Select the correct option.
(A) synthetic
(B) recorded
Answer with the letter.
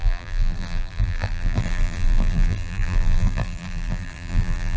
A